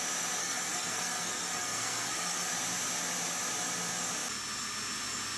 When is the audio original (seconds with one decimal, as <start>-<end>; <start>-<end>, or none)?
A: 0.0-0.4; 2.5-5.4